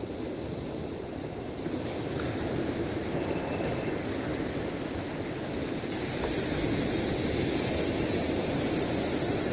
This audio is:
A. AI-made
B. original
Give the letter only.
B